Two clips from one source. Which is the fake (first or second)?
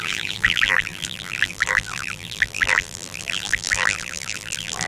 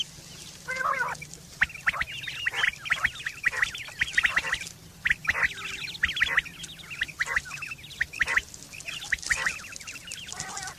first